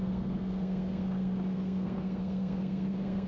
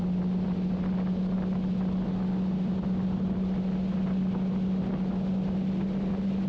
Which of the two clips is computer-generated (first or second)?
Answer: first